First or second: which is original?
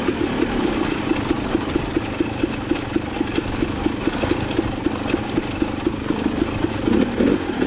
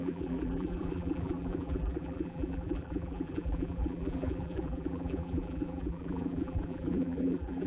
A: first